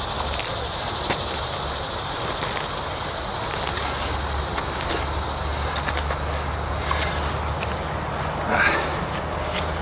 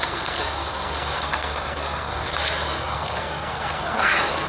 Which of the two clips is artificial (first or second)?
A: second